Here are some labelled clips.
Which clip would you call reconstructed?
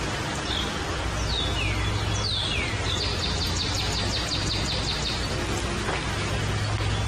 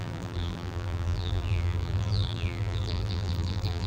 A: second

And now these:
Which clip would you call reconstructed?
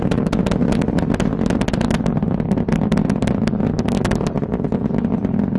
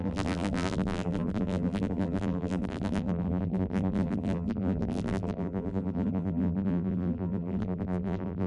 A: second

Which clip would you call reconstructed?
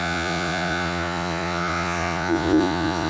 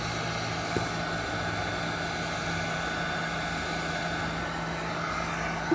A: first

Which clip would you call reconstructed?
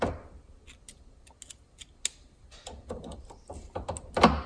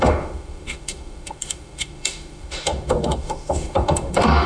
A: second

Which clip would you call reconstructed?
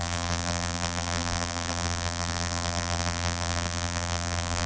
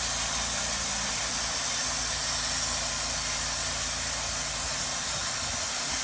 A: first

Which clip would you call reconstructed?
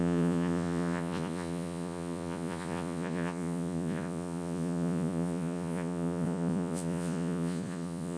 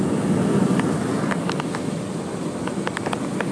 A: first